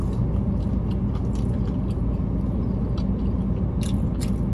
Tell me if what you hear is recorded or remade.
recorded